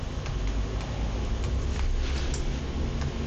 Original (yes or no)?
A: yes